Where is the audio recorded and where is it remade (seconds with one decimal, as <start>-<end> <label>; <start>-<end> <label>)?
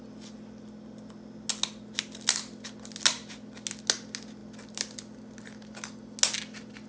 0.0-6.9 recorded